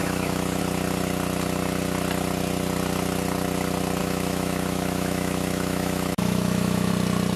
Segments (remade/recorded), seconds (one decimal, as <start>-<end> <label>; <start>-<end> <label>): 0.0-0.6 remade; 0.6-4.0 recorded; 4.0-6.9 remade; 6.9-7.4 recorded